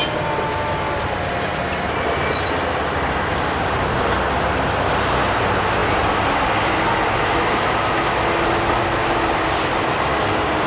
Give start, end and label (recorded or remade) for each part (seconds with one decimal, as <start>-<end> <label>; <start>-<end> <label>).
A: 0.0-10.7 recorded